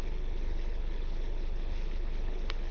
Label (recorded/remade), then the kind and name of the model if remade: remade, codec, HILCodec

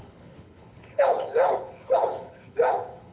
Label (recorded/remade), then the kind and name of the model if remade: remade, codec, HILCodec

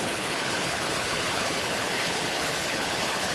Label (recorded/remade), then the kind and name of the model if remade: remade, codec, HILCodec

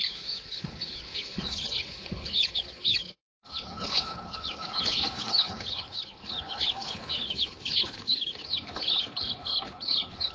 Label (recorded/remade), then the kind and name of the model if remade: remade, codec, HILCodec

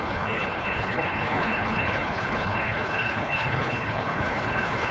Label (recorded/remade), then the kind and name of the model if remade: remade, codec, HILCodec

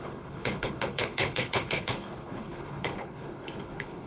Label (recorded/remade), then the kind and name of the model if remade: remade, codec, HILCodec